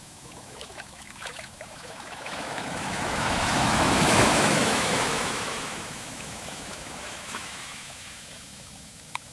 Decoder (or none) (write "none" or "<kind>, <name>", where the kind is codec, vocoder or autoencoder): autoencoder, DAC-VAE